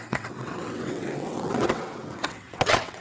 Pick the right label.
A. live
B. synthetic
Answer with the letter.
B